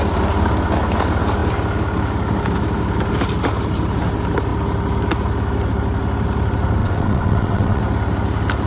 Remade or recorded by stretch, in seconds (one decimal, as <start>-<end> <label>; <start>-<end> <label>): 0.0-6.8 recorded; 6.8-7.8 remade; 7.8-8.7 recorded